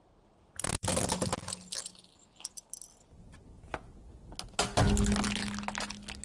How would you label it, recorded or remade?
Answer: recorded